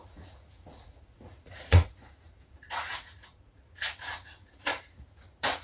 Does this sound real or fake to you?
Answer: fake